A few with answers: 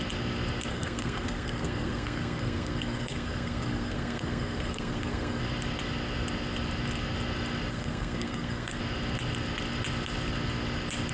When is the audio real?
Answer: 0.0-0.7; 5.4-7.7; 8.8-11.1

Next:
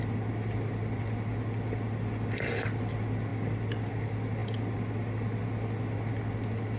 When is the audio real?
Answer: 0.0-6.8